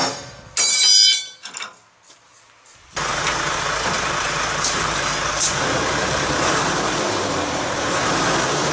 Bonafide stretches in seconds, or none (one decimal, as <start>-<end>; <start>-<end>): 0.0-3.1; 8.1-8.7